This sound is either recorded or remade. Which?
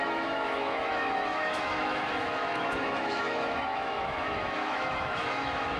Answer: remade